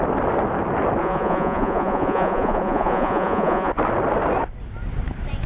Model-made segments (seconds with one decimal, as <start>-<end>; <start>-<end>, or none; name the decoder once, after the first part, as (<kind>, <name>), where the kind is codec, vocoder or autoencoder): 1.0-3.7 (vocoder, Vocos)